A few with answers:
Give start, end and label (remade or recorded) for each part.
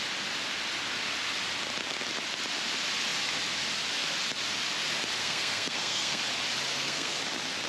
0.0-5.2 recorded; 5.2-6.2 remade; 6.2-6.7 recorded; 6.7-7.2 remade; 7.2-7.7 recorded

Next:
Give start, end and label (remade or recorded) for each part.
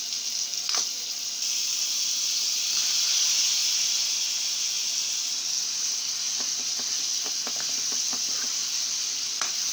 0.0-0.5 recorded; 0.5-3.1 remade; 3.1-8.6 recorded; 8.6-9.7 remade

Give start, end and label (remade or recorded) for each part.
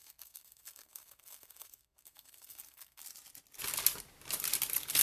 0.0-3.0 remade; 3.0-5.0 recorded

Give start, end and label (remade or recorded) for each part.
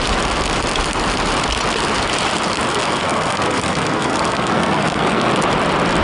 0.0-2.7 recorded; 2.7-5.3 remade; 5.3-6.0 recorded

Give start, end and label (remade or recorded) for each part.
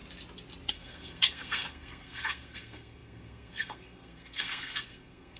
0.0-0.7 recorded; 0.7-5.4 remade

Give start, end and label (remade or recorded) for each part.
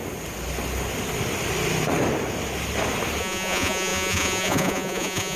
0.0-3.2 recorded; 3.2-5.4 remade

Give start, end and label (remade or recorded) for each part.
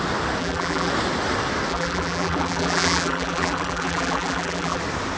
0.0-0.4 recorded; 0.4-0.9 remade; 0.9-1.7 recorded; 1.7-4.8 remade; 4.8-5.2 recorded